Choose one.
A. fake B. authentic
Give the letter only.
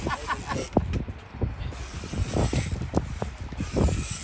B